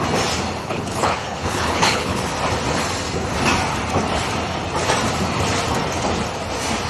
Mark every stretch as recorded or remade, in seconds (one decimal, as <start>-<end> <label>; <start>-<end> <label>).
0.0-0.6 recorded; 0.6-2.2 remade; 2.2-6.9 recorded